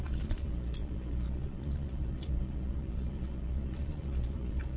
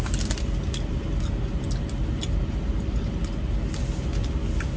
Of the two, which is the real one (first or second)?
second